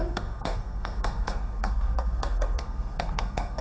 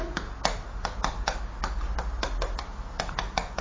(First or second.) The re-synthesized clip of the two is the first